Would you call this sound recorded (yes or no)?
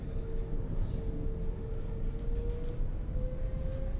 yes